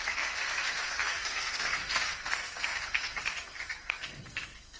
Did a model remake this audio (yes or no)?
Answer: yes